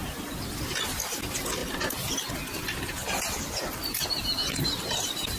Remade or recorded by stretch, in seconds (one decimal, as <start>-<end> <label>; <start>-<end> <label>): 0.0-5.4 recorded